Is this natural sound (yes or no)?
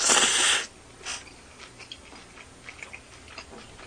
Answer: yes